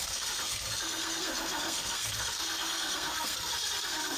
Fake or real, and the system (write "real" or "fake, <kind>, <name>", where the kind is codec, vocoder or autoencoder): fake, codec, SNAC